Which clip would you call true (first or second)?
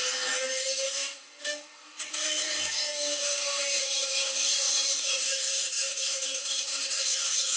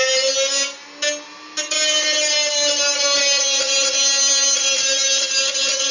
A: second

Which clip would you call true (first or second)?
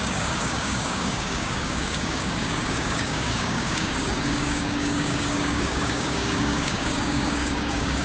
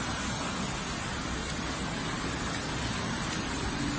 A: second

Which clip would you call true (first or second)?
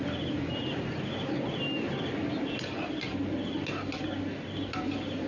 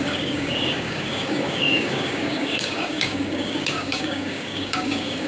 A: first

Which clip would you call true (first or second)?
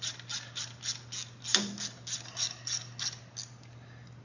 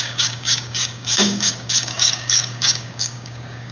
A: first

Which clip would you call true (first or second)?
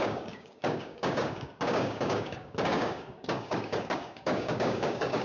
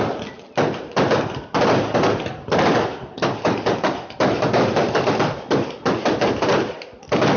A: second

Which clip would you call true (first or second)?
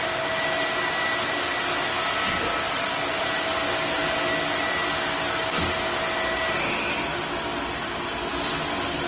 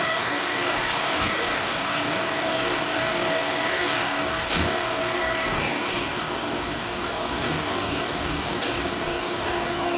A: first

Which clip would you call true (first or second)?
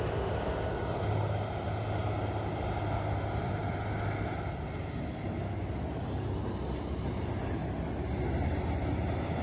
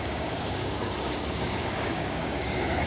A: first